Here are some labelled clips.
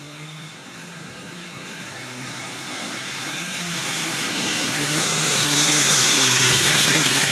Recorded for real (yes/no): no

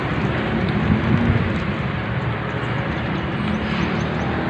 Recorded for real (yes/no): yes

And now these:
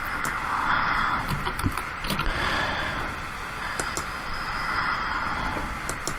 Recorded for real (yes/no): yes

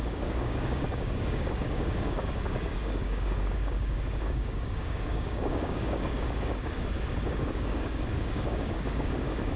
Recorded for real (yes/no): no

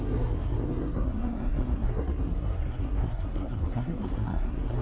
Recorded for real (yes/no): no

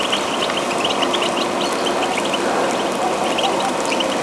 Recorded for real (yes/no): yes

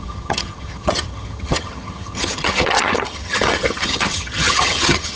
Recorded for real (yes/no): no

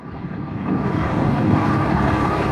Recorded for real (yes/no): no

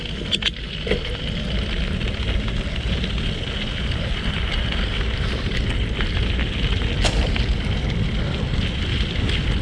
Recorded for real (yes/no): yes